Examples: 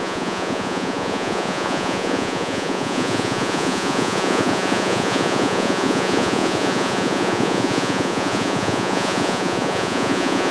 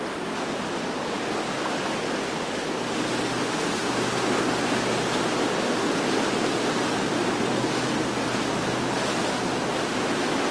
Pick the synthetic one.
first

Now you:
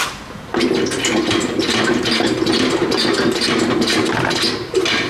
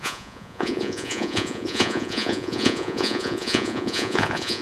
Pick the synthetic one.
second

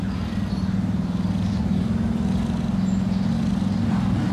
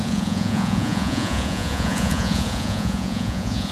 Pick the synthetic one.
second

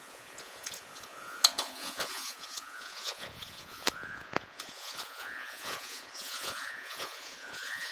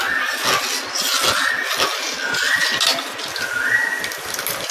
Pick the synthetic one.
first